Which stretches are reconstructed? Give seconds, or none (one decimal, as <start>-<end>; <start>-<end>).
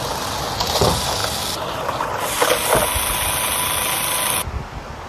none